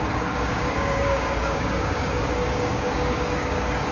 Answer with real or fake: fake